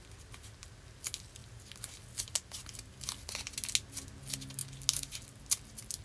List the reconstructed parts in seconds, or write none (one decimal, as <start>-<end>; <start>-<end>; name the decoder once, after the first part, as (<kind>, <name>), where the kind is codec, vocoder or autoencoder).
none